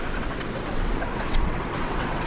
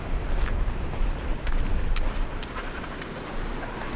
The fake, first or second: first